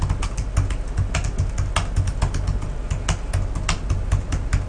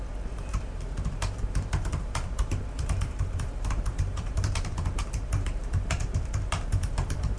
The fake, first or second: second